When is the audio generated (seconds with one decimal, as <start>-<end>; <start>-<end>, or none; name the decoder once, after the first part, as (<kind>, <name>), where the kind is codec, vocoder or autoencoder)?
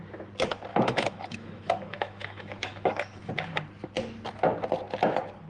0.7-3.3 (autoencoder, DAC-VAE)